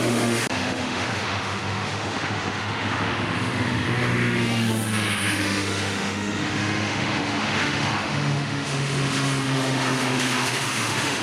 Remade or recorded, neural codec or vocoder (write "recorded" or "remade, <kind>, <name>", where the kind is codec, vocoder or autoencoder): remade, autoencoder, DAC-VAE